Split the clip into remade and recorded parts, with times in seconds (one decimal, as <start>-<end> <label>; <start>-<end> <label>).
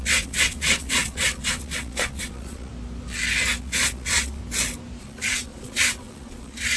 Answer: 0.0-2.7 remade; 2.7-3.6 recorded; 3.6-4.4 remade; 4.4-5.0 recorded; 5.0-6.8 remade